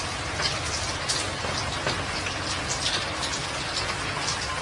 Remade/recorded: recorded